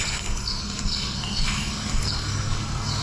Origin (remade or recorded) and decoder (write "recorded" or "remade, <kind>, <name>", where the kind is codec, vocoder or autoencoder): remade, codec, SNAC